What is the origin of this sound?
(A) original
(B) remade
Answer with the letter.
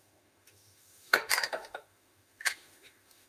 B